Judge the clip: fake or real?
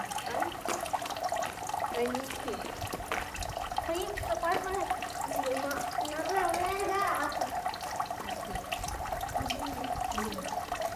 real